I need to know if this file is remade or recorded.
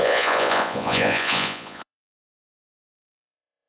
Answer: remade